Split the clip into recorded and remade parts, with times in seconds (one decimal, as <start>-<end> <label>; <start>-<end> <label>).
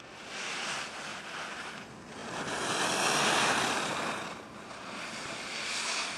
0.0-1.1 recorded; 1.1-1.7 remade; 1.7-6.2 recorded